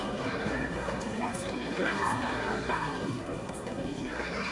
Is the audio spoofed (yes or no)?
yes